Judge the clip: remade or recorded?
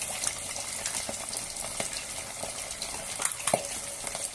recorded